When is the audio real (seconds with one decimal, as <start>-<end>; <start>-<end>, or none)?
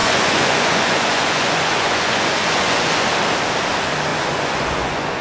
3.1-4.1